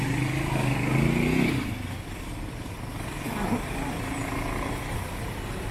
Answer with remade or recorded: recorded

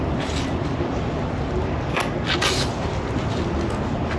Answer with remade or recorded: recorded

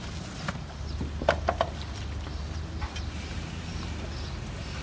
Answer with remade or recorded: recorded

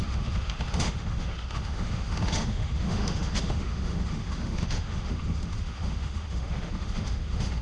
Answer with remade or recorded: remade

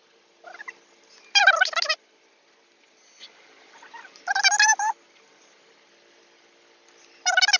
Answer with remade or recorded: recorded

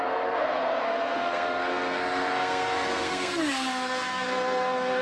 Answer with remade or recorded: remade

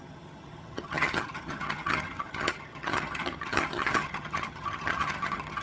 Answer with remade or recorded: remade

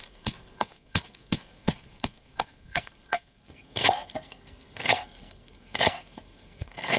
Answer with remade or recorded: remade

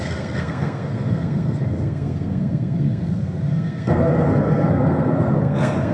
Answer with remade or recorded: remade